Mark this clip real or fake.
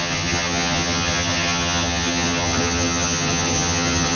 fake